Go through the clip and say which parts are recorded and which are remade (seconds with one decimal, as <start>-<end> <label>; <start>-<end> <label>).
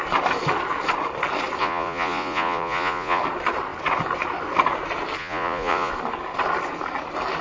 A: 0.0-1.6 recorded; 1.6-3.2 remade; 3.2-5.2 recorded; 5.2-5.9 remade; 5.9-7.4 recorded